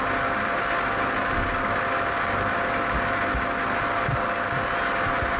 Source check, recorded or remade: recorded